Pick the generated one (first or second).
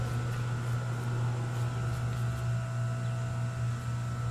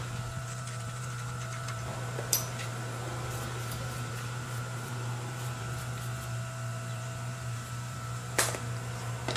second